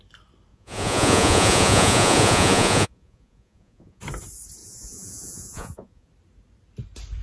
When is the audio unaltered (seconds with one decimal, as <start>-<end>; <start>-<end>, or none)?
0.0-0.5; 4.0-4.6; 6.1-7.2